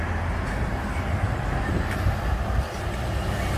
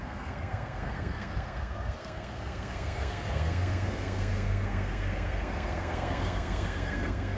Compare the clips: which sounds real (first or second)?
first